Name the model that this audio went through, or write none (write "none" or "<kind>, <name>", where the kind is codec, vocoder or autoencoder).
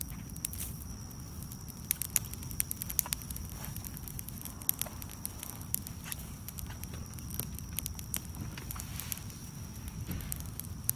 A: vocoder, BigVGAN v2